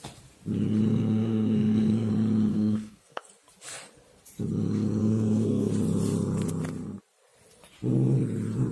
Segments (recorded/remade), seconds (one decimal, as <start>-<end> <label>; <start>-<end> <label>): 0.0-0.9 recorded; 0.9-2.1 remade; 2.1-2.5 recorded; 2.5-3.2 remade; 3.2-5.0 recorded; 5.0-5.7 remade; 5.7-8.7 recorded